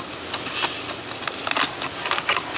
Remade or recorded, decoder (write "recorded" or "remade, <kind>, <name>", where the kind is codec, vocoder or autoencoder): recorded